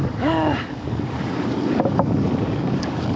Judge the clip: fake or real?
fake